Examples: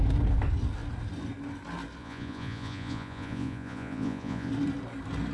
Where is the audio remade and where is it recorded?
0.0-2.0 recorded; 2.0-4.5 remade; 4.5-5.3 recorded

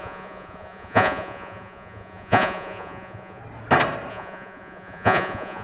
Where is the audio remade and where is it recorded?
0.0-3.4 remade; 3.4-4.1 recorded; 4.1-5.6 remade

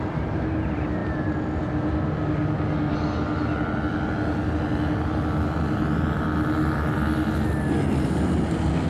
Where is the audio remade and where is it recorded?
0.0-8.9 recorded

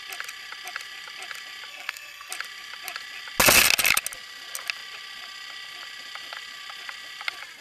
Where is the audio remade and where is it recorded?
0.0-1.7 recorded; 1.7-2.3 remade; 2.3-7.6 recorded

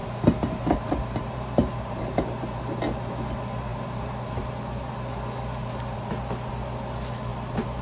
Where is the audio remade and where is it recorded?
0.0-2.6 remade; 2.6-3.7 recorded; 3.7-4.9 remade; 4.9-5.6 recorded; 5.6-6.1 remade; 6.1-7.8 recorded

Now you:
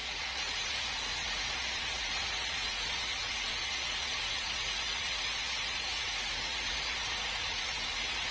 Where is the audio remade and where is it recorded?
0.0-8.3 remade